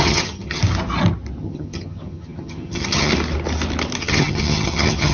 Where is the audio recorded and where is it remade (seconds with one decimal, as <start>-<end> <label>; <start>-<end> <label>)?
0.0-0.6 remade; 0.6-1.4 recorded; 1.4-3.1 remade; 3.1-4.0 recorded; 4.0-5.1 remade